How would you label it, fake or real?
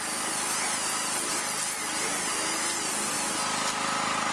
real